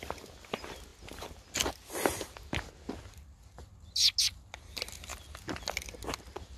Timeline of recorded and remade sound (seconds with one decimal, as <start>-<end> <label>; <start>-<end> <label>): 0.0-6.6 recorded